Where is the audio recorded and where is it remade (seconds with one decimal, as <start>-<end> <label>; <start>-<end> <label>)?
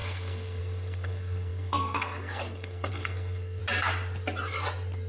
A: 0.0-3.6 remade; 3.6-5.1 recorded